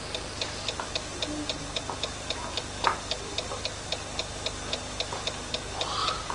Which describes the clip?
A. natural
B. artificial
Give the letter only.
A